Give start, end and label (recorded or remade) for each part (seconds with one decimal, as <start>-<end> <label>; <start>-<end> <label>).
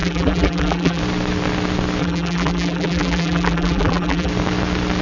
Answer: 0.0-1.0 remade; 1.0-2.0 recorded; 2.0-4.3 remade; 4.3-5.0 recorded